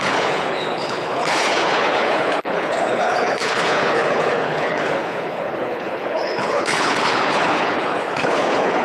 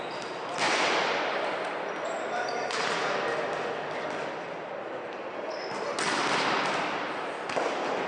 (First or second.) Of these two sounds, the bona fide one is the second